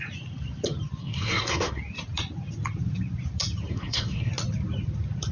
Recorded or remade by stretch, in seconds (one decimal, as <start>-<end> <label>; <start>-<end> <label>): 0.0-1.0 recorded; 1.0-1.8 remade; 1.8-3.7 recorded; 3.7-4.3 remade; 4.3-5.3 recorded